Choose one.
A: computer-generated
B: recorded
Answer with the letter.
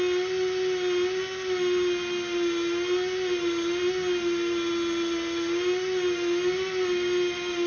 B